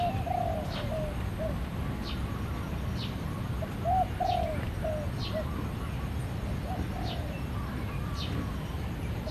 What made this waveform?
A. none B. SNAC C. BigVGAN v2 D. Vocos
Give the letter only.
A